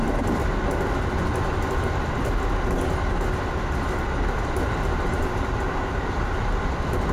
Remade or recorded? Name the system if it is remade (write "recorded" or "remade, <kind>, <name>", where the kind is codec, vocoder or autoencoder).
recorded